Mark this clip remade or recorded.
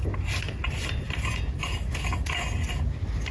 recorded